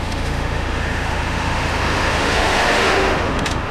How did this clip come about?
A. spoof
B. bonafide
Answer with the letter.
A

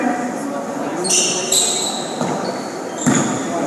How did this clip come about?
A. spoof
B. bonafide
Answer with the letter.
B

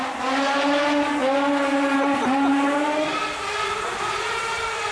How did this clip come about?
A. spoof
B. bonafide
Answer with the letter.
B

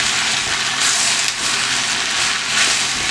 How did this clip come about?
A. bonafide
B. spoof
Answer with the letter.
A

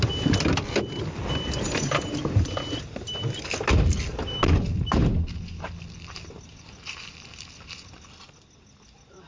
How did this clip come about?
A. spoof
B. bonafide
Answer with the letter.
B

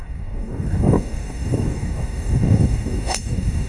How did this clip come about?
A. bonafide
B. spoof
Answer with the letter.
B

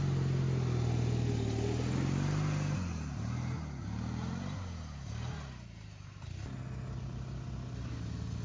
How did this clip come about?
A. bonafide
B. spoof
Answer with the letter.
A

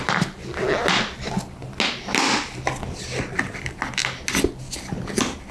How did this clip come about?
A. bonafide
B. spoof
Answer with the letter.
A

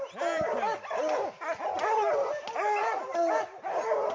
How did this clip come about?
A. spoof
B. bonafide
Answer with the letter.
B